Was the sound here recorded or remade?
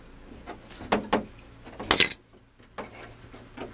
recorded